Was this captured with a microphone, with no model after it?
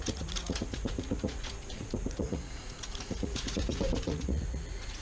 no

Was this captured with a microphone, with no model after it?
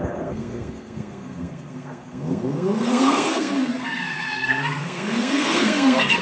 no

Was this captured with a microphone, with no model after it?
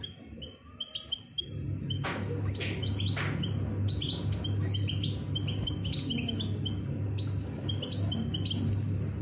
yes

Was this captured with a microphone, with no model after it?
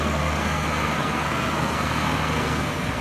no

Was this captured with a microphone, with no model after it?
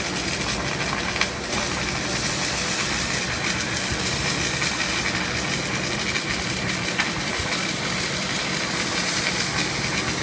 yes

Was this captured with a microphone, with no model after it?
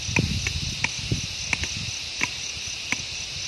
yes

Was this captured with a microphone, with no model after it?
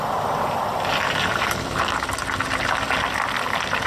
yes